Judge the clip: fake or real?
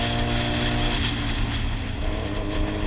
real